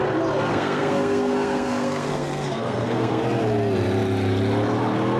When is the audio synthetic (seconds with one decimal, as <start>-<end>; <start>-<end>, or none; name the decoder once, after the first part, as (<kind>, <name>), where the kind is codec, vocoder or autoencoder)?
0.5-3.2 (codec, SNAC)